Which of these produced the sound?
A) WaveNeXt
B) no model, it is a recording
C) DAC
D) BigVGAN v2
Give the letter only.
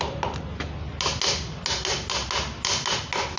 B